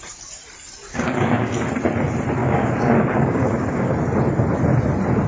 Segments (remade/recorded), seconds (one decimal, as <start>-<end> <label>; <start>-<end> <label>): 0.0-0.9 recorded; 0.9-1.5 remade; 1.5-2.4 recorded; 2.4-3.9 remade; 3.9-5.3 recorded